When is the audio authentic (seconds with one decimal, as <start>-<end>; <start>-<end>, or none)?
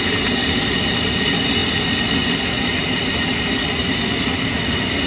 0.0-5.1